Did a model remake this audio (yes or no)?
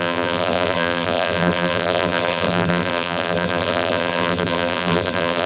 yes